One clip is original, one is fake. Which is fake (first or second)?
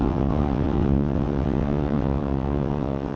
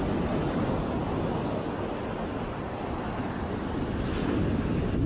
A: first